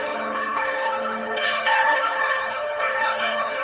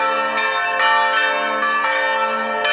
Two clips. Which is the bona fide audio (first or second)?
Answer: second